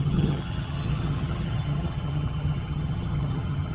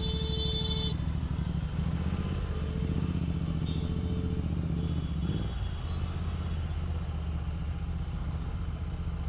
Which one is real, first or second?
second